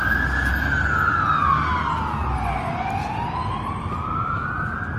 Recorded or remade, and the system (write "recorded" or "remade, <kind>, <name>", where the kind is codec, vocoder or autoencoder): recorded